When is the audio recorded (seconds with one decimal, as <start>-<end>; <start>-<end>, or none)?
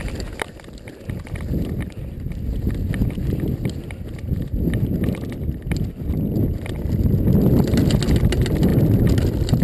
0.0-9.6